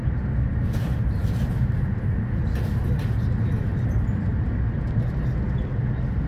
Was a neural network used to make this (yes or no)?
no